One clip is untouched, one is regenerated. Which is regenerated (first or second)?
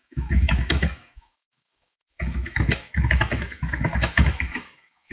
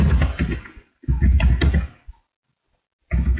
first